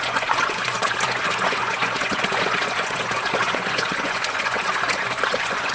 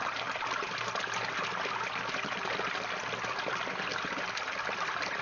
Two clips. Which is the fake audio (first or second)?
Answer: first